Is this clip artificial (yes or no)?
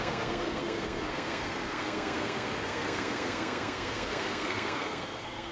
yes